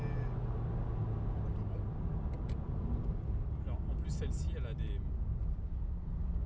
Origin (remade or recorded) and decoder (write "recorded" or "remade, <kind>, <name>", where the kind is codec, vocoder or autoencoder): recorded